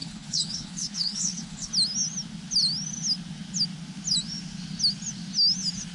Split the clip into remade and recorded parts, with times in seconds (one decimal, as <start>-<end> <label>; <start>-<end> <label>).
0.0-1.7 remade; 1.7-5.9 recorded